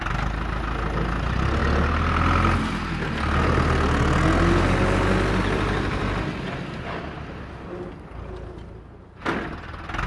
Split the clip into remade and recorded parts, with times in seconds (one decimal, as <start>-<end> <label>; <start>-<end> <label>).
0.0-10.1 recorded